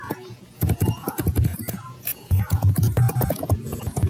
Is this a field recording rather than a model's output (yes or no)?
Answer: no